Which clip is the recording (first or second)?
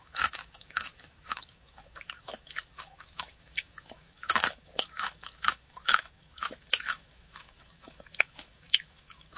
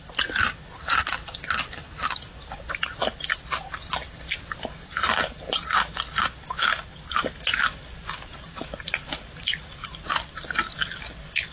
second